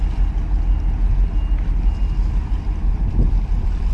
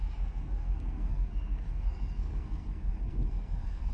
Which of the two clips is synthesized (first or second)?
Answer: second